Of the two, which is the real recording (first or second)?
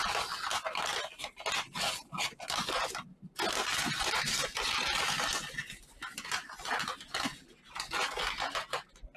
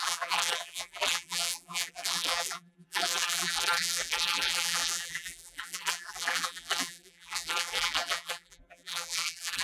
first